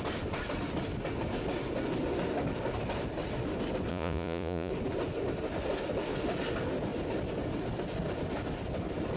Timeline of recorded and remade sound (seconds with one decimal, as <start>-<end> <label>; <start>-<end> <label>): 0.0-3.9 recorded; 3.9-4.7 remade; 4.7-9.2 recorded

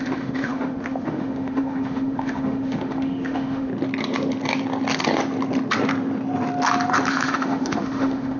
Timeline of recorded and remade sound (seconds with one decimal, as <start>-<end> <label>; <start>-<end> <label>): 0.0-3.7 remade; 3.7-7.1 recorded; 7.1-8.4 remade

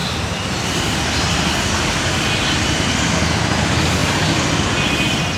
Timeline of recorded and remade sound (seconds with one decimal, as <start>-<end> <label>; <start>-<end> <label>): 0.0-5.4 recorded

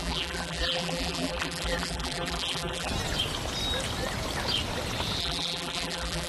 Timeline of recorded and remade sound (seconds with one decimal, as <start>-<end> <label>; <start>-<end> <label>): 0.0-2.9 remade; 2.9-5.2 recorded; 5.2-6.3 remade

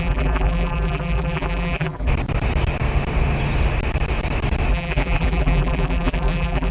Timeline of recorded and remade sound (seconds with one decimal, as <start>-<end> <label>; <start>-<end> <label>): 0.0-2.1 remade; 2.1-4.7 recorded; 4.7-6.7 remade

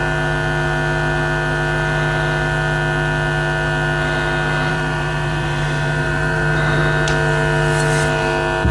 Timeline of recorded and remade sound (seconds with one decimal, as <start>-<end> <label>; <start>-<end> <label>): 0.0-4.7 recorded; 4.7-6.8 remade; 6.8-8.7 recorded

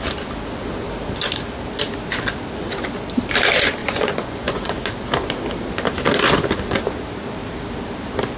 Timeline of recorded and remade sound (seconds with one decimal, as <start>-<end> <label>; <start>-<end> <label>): 0.0-3.8 recorded; 3.8-4.8 remade; 4.8-8.4 recorded

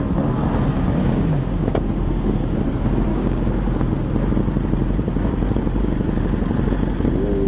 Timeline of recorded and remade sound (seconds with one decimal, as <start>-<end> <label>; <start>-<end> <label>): 0.0-1.0 recorded; 1.0-2.7 remade; 2.7-3.1 recorded; 3.1-4.1 remade; 4.1-7.5 recorded